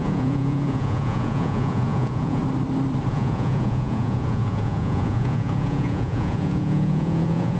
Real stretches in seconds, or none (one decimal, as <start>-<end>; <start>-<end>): 2.4-3.1